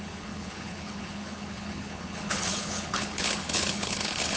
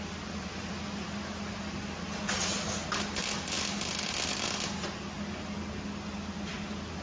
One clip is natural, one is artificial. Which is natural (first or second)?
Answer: second